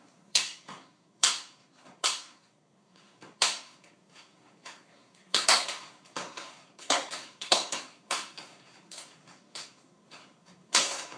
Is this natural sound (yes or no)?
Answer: no